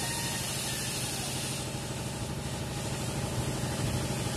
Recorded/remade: recorded